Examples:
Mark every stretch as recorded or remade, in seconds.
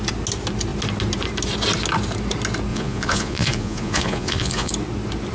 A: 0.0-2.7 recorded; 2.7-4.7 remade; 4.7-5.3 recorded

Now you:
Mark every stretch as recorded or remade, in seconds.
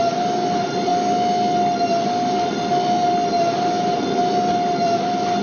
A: 0.0-5.4 recorded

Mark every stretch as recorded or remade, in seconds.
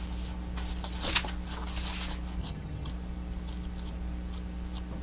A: 0.0-2.4 recorded; 2.4-2.9 remade; 2.9-5.0 recorded